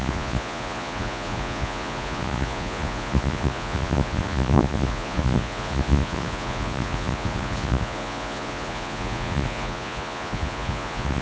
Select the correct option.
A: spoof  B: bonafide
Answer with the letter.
A